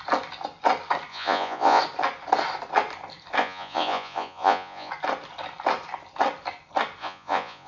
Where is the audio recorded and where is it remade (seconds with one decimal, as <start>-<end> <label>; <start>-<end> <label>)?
0.0-1.1 recorded; 1.1-1.8 remade; 1.8-3.4 recorded; 3.4-4.9 remade; 4.9-7.0 recorded; 7.0-7.7 remade